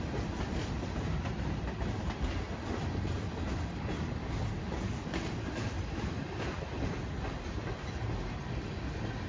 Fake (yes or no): no